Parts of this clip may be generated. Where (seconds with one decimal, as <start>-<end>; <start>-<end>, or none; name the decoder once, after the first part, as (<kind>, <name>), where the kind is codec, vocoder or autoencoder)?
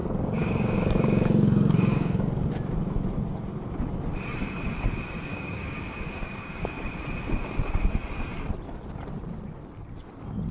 0.0-2.5 (codec, DAC); 5.3-6.9